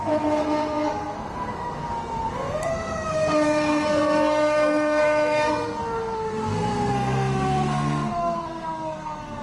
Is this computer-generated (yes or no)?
yes